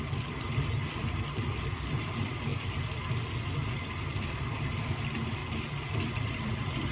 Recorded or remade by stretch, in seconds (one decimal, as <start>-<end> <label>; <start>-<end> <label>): 0.0-5.4 remade; 5.4-5.9 recorded; 5.9-6.9 remade